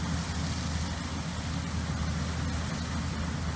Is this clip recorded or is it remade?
recorded